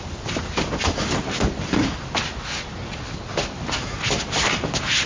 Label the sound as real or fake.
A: real